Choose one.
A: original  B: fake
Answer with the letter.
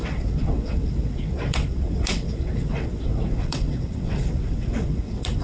B